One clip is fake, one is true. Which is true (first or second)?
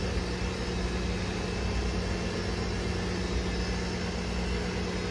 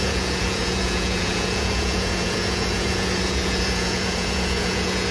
first